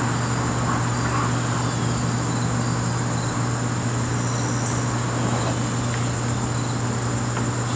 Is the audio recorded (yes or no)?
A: yes